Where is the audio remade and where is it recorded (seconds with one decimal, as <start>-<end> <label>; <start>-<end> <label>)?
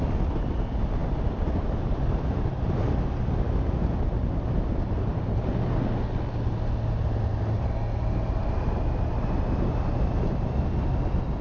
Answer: 0.0-11.4 recorded